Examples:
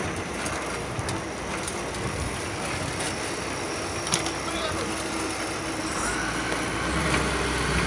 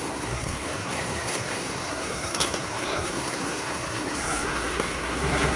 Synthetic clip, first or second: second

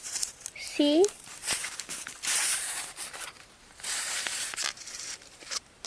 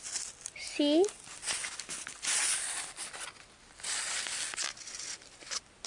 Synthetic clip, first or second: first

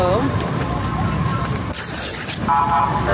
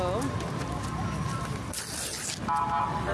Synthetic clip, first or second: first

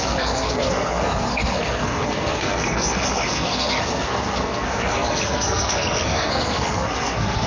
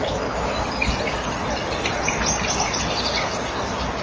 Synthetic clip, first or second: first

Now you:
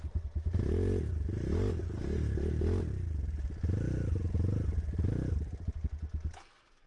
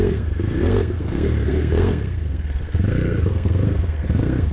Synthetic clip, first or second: second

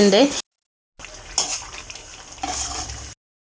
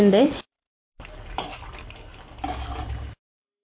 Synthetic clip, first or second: second